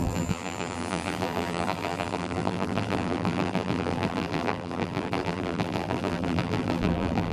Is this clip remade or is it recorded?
remade